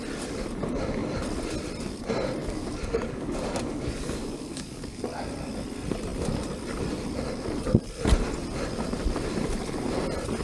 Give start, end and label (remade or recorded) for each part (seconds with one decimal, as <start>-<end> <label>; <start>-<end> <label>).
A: 0.0-2.4 recorded; 2.4-5.0 remade; 5.0-10.4 recorded

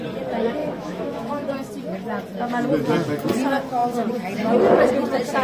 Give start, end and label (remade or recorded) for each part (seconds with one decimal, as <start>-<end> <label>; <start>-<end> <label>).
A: 0.0-0.6 recorded; 0.6-1.5 remade; 1.5-5.4 recorded

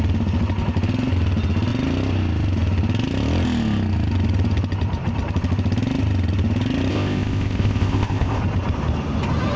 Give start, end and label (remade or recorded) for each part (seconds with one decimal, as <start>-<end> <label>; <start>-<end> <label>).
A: 0.0-6.9 recorded; 6.9-8.4 remade; 8.4-9.6 recorded

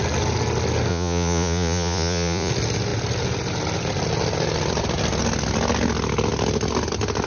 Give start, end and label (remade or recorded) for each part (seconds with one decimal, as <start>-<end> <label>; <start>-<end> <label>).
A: 0.0-0.9 recorded; 0.9-2.5 remade; 2.5-7.3 recorded

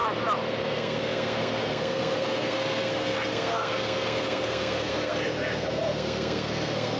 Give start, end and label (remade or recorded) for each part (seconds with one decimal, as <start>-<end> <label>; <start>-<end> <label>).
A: 0.0-0.6 recorded; 0.6-7.0 remade

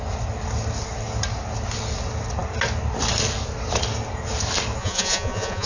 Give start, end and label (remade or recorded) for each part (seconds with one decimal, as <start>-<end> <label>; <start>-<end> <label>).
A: 0.0-4.8 recorded; 4.8-5.7 remade